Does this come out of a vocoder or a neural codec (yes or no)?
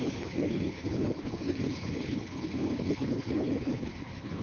yes